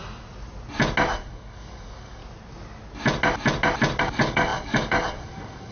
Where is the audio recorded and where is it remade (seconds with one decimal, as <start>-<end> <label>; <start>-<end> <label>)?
0.0-1.2 recorded; 1.2-2.2 remade; 2.2-4.0 recorded; 4.0-5.7 remade